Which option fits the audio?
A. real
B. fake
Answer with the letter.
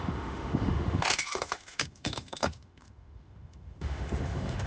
B